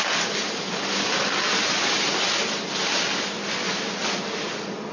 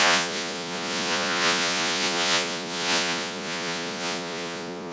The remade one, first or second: second